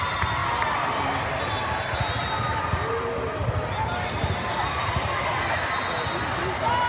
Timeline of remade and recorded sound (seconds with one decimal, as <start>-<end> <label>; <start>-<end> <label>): 0.0-6.9 recorded